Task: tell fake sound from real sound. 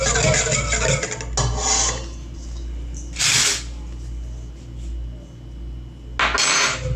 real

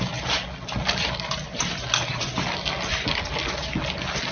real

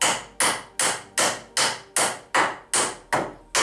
real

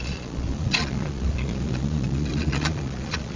fake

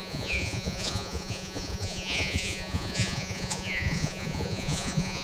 fake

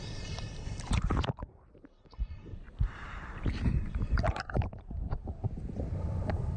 fake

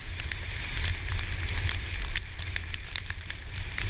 real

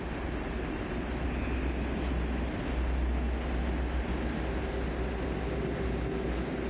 real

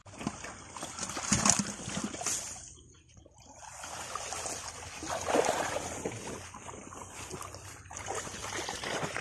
real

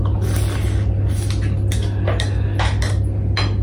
real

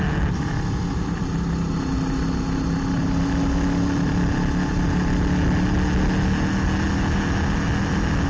real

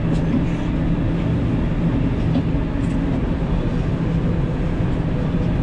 real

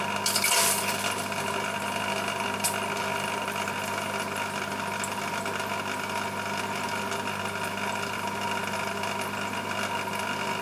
real